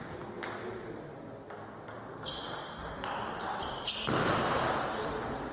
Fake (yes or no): no